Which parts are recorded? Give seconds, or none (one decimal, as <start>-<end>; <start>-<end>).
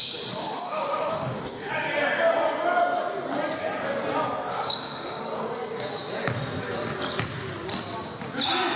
0.0-0.4; 1.7-4.5; 5.2-8.8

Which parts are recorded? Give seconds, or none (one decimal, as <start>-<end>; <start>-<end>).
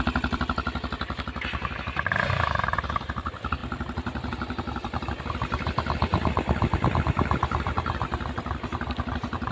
none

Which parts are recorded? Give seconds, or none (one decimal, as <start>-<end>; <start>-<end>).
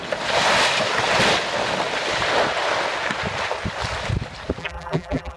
0.0-4.6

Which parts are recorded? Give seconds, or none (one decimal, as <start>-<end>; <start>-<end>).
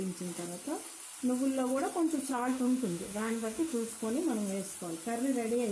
0.0-2.3; 3.9-5.7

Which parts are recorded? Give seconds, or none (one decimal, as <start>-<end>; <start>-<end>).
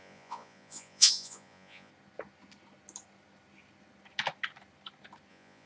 1.9-5.3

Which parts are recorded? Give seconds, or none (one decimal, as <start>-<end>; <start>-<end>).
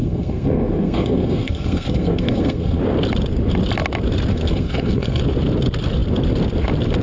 2.8-4.3; 5.2-7.0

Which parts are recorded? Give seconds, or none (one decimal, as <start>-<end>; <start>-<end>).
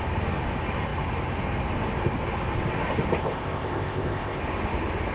0.0-3.2; 4.4-5.1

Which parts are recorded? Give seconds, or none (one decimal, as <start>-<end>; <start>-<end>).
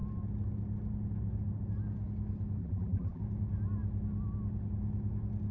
0.0-2.6; 3.2-5.5